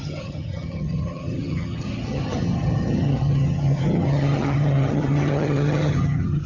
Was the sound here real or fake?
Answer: fake